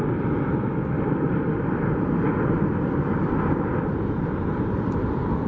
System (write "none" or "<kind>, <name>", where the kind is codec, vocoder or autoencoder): vocoder, BigVGAN v2